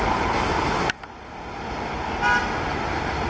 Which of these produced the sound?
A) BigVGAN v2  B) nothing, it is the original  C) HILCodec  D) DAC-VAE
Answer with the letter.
B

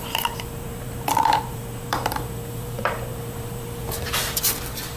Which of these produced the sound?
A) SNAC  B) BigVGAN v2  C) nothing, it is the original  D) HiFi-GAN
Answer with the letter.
B